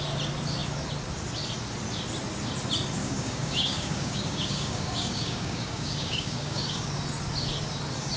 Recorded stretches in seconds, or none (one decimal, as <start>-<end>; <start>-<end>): 0.0-3.0; 6.9-8.2

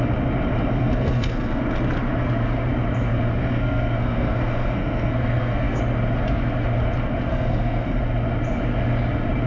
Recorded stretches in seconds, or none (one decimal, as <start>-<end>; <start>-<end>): 0.0-0.7; 1.6-3.4; 5.8-7.3; 8.0-9.5

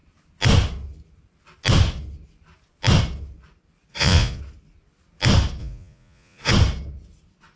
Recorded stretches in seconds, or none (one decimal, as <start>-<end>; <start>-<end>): 0.0-3.9; 4.4-5.6; 6.5-7.6

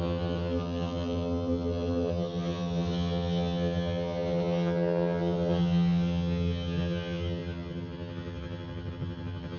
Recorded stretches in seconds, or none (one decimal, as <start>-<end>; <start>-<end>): none